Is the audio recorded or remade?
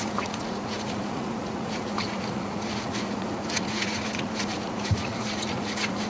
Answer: remade